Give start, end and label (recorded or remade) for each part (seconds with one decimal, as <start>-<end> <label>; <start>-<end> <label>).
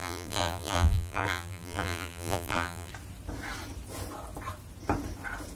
0.0-2.9 remade; 2.9-5.6 recorded